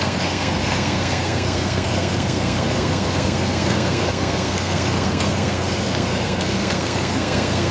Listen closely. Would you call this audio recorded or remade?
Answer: remade